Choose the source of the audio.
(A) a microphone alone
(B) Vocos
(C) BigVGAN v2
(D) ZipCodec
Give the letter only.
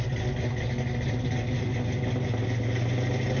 A